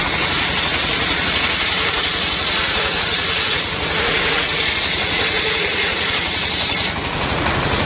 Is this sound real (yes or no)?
no